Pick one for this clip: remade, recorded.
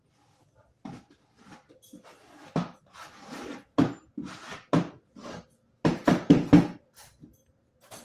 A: recorded